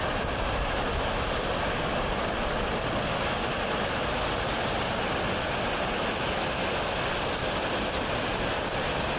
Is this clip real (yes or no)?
yes